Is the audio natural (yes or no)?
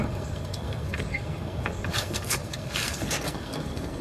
no